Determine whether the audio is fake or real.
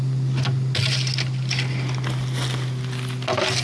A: real